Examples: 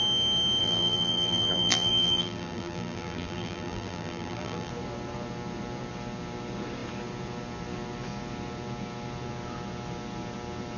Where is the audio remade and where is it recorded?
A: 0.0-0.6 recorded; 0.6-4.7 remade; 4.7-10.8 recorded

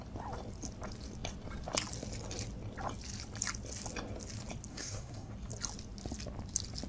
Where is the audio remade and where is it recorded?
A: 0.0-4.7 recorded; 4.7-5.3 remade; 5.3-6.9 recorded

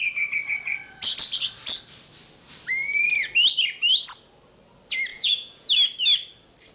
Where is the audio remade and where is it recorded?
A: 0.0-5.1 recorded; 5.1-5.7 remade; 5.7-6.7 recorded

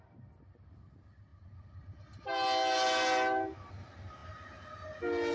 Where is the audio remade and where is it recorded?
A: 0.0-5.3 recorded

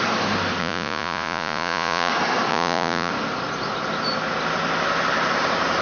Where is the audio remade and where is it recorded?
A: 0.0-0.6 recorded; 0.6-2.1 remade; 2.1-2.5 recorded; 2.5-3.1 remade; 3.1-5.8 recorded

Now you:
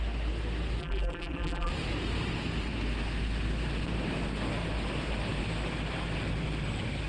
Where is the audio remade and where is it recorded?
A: 0.0-0.8 recorded; 0.8-1.7 remade; 1.7-7.1 recorded

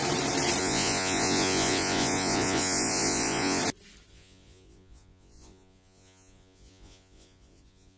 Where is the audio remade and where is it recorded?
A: 0.0-0.6 recorded; 0.6-3.6 remade; 3.6-4.1 recorded; 4.1-8.0 remade

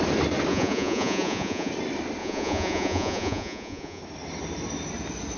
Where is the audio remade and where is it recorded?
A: 0.0-0.5 recorded; 0.5-1.7 remade; 1.7-2.2 recorded; 2.2-4.0 remade; 4.0-5.4 recorded